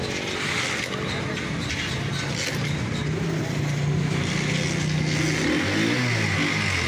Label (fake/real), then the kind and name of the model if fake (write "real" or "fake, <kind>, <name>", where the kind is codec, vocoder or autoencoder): real